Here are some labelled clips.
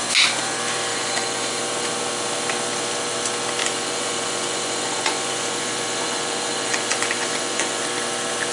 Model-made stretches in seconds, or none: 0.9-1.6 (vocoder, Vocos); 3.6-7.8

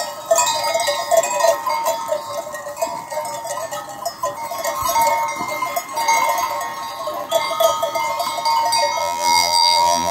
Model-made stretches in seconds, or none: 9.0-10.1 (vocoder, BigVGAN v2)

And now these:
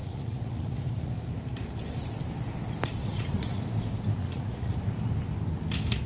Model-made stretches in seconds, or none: 0.0-1.1 (vocoder, Vocos); 3.0-3.6; 4.2-4.9

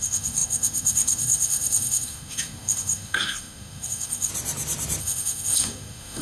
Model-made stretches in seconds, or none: 0.0-4.3 (codec, SNAC); 5.0-6.2